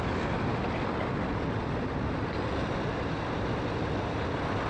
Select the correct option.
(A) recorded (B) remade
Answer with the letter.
A